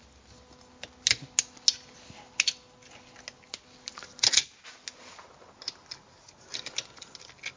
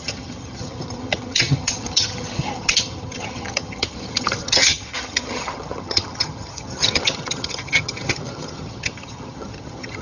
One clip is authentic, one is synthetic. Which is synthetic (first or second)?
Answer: second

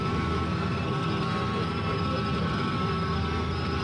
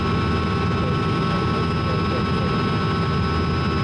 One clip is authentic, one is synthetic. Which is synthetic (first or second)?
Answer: first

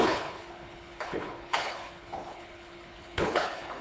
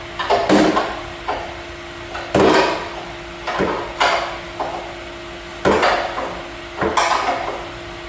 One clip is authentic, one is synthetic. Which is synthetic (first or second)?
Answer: first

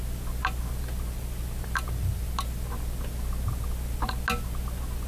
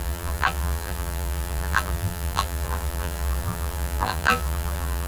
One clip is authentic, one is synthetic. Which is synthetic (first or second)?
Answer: second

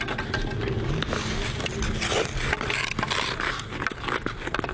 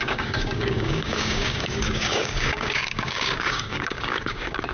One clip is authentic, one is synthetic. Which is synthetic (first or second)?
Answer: second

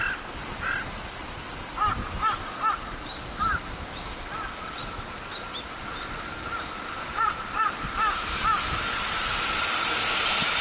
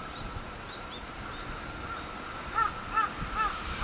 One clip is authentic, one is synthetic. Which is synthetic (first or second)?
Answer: first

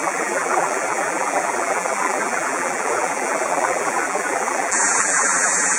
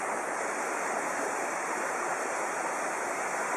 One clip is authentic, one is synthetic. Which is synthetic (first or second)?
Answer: first